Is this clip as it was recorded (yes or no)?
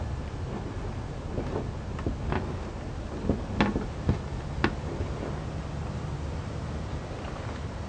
yes